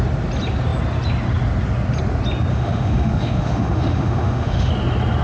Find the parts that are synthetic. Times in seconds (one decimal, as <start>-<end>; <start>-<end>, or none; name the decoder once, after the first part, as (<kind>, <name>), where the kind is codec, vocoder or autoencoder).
2.5-4.7 (autoencoder, DAC-VAE)